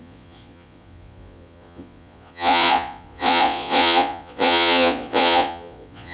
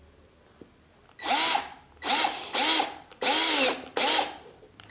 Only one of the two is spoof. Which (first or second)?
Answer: first